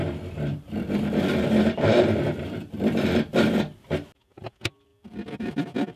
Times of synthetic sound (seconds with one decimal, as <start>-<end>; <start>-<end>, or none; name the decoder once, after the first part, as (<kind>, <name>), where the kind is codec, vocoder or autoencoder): 0.0-3.6 (vocoder, BigVGAN v2); 4.9-5.5